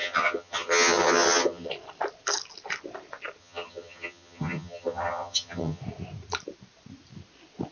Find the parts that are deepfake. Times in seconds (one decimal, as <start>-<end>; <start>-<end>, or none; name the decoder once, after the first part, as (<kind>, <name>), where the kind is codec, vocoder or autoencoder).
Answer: 0.0-1.7 (vocoder, HiFi-GAN); 3.4-5.8